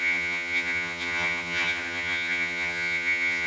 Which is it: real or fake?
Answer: fake